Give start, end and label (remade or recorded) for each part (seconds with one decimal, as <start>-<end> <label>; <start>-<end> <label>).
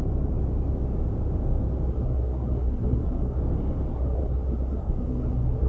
0.0-1.9 recorded; 1.9-3.4 remade; 3.4-3.9 recorded; 3.9-5.7 remade